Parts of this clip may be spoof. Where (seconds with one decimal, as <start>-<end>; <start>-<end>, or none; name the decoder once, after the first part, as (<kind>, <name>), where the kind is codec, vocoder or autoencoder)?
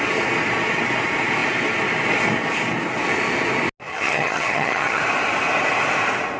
3.9-5.0 (vocoder, HiFi-GAN)